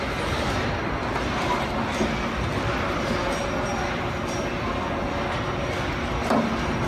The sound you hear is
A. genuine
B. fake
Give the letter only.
A